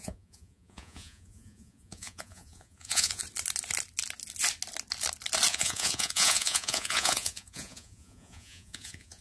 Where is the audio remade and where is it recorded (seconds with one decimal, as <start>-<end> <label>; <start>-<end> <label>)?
0.0-3.2 remade; 3.2-5.5 recorded; 5.5-9.2 remade